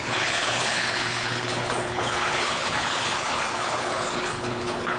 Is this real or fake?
fake